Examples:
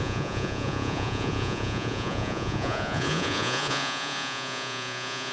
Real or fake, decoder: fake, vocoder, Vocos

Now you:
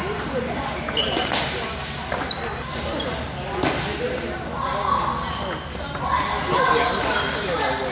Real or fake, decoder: real